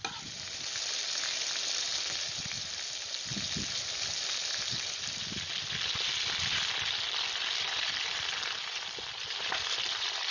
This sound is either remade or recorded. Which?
recorded